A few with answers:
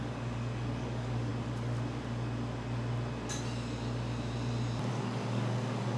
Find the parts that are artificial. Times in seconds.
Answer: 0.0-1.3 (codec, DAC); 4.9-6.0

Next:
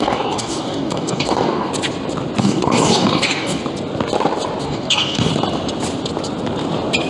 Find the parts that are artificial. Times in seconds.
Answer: 0.0-1.7 (codec, DAC); 2.4-3.6; 4.6-5.3

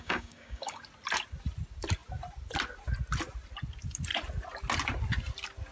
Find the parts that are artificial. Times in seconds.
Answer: 0.0-0.8 (codec, DAC)

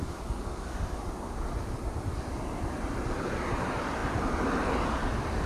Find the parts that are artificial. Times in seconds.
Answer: 0.0-1.0 (codec, DAC)

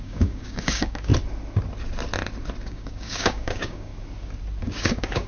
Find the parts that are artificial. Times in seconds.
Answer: 0.0-1.1 (codec, DAC); 2.6-3.9; 4.6-5.3